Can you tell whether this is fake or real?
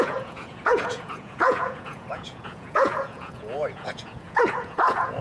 fake